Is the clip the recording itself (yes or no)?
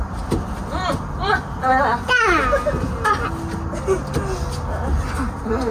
yes